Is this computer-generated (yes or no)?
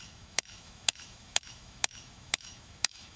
yes